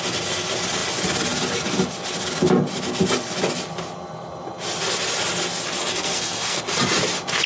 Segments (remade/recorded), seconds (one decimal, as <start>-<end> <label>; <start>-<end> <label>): 0.0-5.8 recorded; 5.8-6.6 remade; 6.6-7.5 recorded